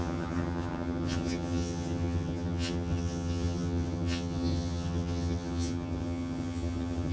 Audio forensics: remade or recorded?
remade